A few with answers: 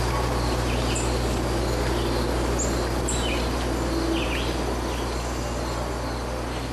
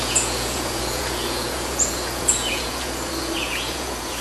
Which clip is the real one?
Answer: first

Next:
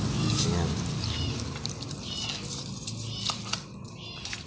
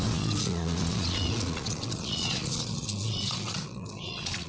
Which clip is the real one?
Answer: first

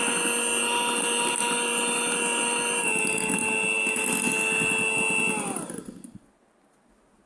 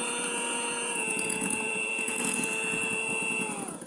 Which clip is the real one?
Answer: first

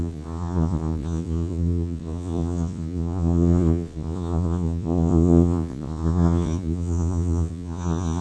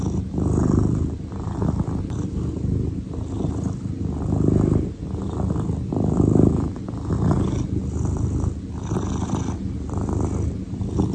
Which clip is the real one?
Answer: second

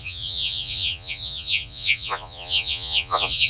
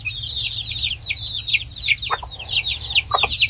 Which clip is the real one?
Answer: second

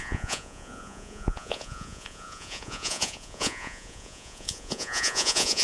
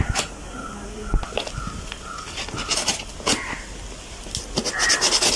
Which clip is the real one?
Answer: second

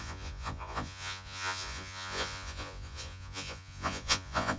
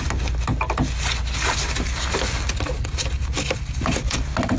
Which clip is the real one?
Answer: second